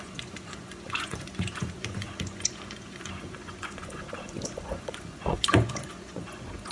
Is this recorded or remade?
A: remade